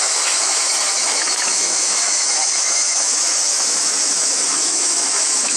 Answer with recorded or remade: remade